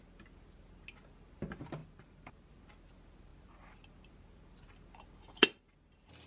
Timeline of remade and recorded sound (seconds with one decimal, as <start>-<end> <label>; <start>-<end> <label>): 0.0-6.3 recorded